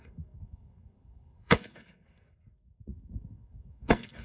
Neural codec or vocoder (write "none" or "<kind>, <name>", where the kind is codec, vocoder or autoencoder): codec, SNAC